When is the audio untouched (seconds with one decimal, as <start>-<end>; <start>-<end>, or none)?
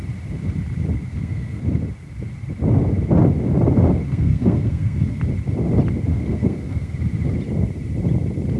0.0-1.1; 1.6-4.1; 5.2-6.1; 6.9-8.6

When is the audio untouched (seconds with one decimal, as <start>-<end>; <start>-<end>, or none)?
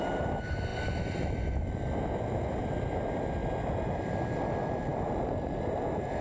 0.0-6.2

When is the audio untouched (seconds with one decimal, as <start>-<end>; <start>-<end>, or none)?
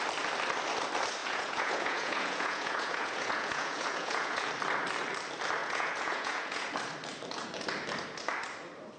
0.0-1.2; 4.5-5.6; 6.7-9.0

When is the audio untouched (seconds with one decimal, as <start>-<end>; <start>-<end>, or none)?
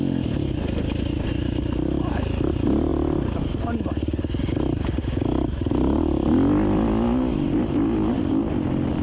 0.0-9.0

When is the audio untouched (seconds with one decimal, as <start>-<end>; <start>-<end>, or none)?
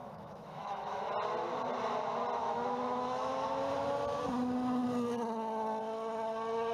1.0-2.4; 3.3-6.7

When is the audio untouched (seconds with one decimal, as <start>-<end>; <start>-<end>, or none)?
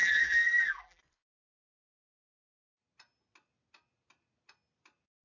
1.0-5.2